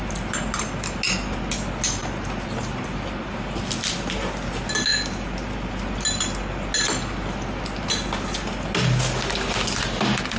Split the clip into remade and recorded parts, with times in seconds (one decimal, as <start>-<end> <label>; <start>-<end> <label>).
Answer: 0.0-10.4 recorded